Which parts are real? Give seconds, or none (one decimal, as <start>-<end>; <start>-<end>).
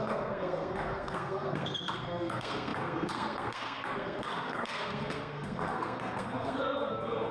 none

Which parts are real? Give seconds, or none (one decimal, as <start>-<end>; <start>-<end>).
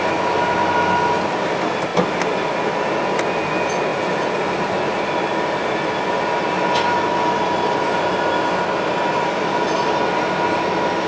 0.0-11.1